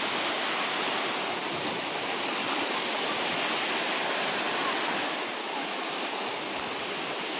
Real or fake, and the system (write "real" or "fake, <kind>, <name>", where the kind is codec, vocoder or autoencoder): real